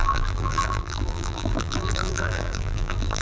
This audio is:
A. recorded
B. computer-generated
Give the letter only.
B